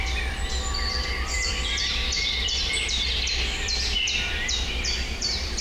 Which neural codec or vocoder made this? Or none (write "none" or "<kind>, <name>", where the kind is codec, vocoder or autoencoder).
vocoder, BigVGAN v2